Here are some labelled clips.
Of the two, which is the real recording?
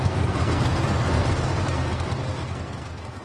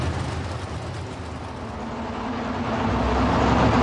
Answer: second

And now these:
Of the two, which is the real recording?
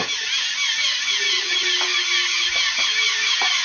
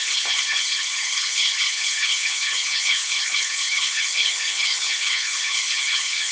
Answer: first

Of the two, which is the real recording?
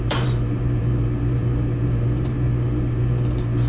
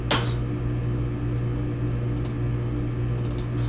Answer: second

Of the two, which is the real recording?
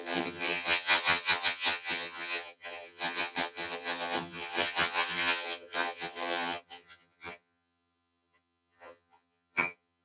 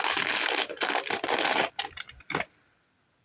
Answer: second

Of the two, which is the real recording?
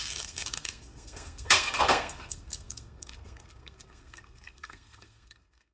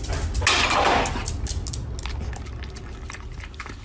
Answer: second